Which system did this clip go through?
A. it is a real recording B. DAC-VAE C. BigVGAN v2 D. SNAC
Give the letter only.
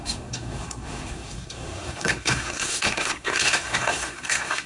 D